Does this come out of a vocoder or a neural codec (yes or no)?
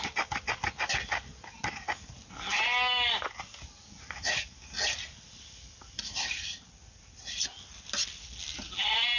no